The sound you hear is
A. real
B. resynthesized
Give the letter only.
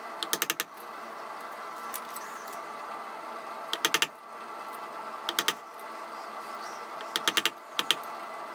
A